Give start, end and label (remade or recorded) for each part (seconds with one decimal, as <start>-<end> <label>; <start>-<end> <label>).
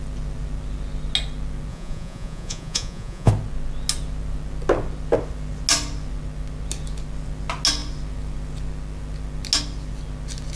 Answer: 0.0-1.7 recorded; 1.7-3.3 remade; 3.3-10.6 recorded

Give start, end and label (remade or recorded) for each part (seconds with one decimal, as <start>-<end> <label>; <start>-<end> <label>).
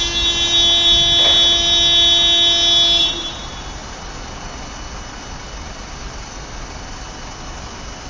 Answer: 0.0-8.1 recorded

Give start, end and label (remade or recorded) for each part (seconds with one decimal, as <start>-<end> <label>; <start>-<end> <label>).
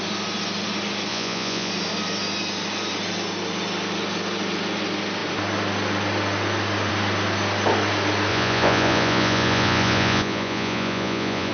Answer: 0.0-1.1 recorded; 1.1-1.7 remade; 1.7-8.3 recorded; 8.3-11.5 remade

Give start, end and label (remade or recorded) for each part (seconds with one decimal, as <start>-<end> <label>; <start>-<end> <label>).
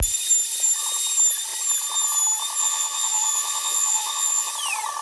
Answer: 0.0-2.6 recorded; 2.6-4.5 remade; 4.5-5.0 recorded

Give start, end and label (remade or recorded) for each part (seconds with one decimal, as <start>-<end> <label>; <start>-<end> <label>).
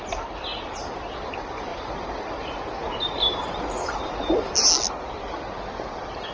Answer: 0.0-6.3 recorded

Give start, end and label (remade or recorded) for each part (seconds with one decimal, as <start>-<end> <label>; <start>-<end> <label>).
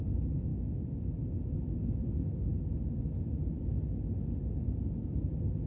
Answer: 0.0-5.7 recorded